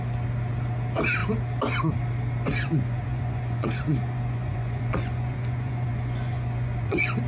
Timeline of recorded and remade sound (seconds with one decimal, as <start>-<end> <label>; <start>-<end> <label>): 0.0-2.6 recorded; 2.6-7.3 remade